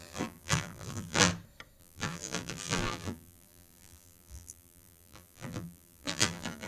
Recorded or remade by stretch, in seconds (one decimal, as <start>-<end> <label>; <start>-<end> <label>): 0.0-1.3 remade; 1.3-1.8 recorded; 1.8-6.7 remade